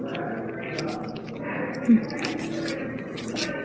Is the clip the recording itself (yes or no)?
yes